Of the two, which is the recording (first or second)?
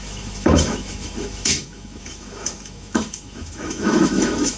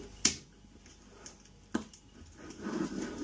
second